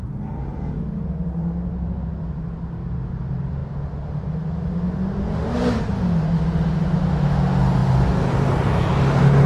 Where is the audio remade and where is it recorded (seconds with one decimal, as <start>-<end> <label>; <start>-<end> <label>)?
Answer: 0.0-9.5 recorded